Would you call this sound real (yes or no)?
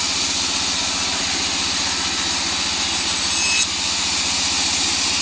yes